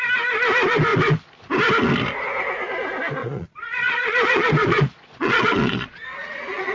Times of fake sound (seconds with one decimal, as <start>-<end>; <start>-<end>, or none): 3.2-6.7